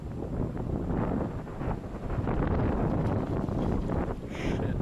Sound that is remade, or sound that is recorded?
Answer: recorded